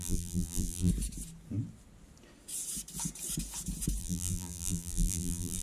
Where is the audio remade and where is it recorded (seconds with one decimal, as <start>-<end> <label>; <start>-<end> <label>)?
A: 0.0-0.9 remade; 0.9-4.0 recorded; 4.0-5.6 remade